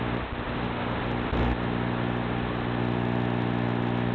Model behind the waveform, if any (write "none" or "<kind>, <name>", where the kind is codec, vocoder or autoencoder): none